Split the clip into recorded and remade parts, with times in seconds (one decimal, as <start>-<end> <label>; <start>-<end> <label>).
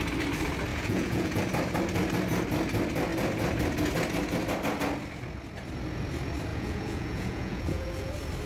0.0-0.7 recorded; 0.7-1.4 remade; 1.4-6.5 recorded; 6.5-8.1 remade; 8.1-8.5 recorded